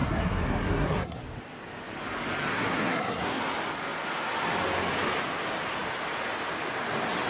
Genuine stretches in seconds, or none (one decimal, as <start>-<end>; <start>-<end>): 1.2-2.5; 3.4-7.3